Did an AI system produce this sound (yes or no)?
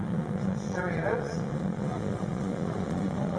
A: yes